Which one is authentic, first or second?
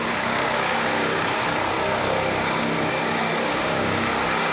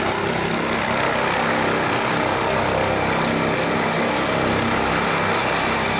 second